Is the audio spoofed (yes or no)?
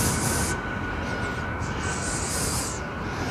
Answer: no